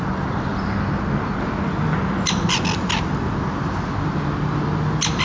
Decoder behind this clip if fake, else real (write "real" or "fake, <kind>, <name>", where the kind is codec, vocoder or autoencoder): real